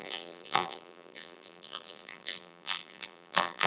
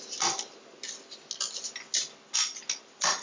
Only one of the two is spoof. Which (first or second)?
first